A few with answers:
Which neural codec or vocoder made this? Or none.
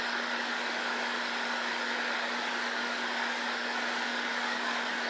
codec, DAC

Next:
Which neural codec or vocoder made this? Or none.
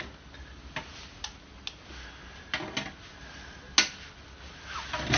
none